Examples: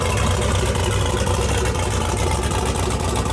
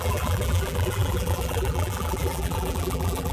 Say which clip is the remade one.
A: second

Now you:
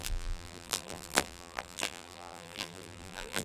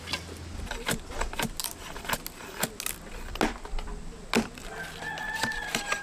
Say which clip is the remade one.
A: first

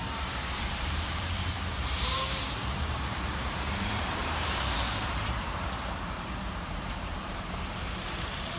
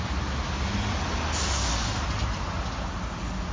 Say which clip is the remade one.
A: first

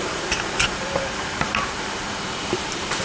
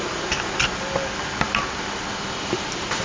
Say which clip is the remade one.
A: first